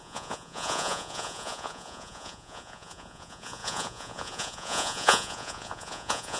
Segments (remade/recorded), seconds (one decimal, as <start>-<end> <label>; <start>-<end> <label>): 0.0-6.4 remade